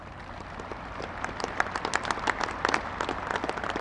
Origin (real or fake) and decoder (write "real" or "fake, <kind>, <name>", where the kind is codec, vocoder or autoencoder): real